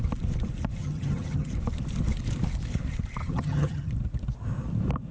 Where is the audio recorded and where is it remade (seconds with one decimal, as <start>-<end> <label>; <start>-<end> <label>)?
0.0-0.8 recorded; 0.8-1.5 remade; 1.5-3.2 recorded; 3.2-3.9 remade; 3.9-5.1 recorded